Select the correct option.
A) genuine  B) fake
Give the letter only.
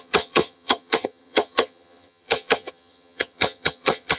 B